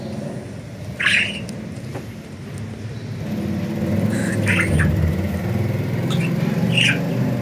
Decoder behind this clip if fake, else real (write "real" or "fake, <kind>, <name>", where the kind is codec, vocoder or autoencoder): real